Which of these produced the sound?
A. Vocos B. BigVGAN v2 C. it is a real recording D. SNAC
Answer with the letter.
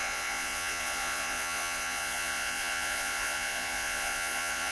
A